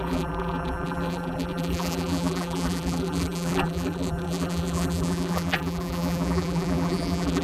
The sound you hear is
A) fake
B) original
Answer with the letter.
A